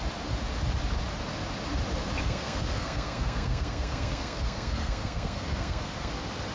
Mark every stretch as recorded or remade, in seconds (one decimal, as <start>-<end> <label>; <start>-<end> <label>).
0.0-2.2 recorded; 2.2-6.1 remade; 6.1-6.5 recorded